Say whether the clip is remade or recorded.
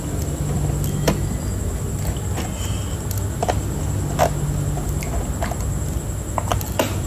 recorded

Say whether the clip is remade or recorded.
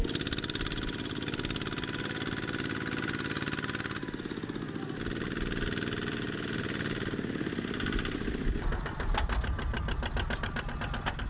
recorded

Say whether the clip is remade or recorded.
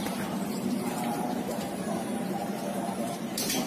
remade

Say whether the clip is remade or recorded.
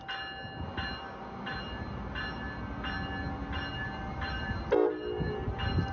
recorded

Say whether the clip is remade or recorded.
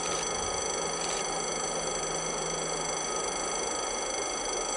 recorded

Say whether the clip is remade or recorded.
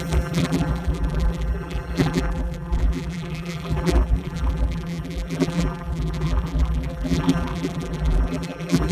remade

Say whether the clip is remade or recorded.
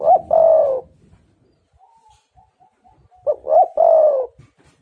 recorded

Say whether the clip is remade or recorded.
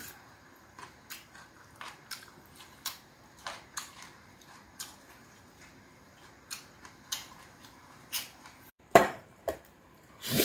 remade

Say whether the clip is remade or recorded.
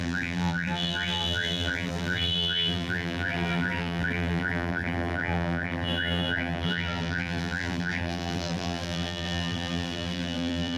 remade